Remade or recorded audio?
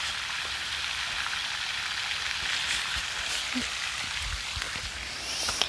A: recorded